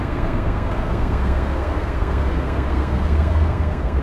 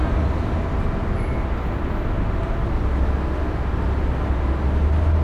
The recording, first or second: second